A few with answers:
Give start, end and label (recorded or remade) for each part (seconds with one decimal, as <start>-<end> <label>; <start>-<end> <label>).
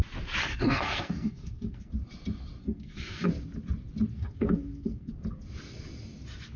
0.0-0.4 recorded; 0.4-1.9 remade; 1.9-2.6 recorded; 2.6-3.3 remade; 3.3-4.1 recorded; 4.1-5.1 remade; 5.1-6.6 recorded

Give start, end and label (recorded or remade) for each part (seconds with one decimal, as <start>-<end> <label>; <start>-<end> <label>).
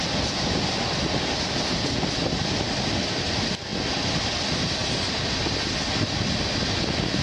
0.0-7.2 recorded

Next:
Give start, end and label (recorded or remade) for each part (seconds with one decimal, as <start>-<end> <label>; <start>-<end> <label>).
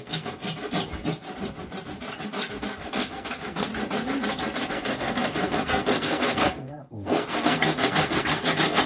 0.0-0.4 remade; 0.4-2.5 recorded; 2.5-3.7 remade; 3.7-4.7 recorded; 4.7-8.9 remade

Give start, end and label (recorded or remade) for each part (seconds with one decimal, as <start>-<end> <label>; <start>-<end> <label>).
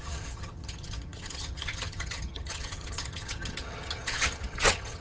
0.0-5.0 remade